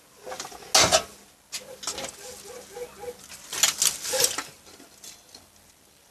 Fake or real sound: real